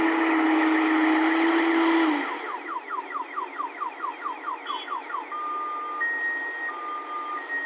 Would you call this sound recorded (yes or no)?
yes